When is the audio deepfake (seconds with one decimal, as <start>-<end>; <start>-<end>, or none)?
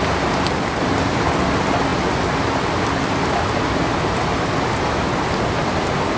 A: none